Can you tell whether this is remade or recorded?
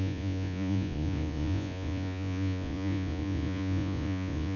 remade